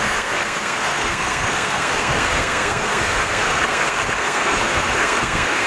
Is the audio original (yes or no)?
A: no